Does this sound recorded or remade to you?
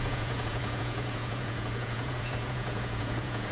remade